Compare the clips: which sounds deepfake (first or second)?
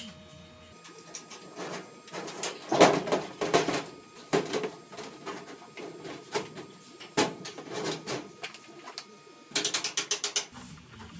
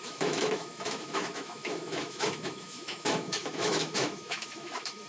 second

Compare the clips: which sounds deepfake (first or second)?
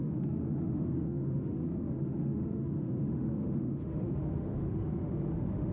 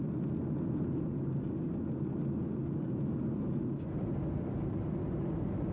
first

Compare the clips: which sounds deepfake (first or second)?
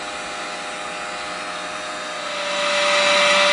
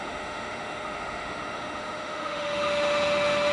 second